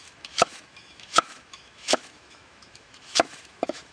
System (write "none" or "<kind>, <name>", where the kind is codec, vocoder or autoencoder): autoencoder, DAC-VAE